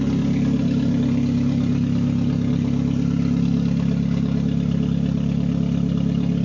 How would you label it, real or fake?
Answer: real